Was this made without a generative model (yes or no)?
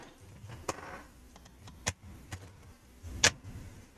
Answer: yes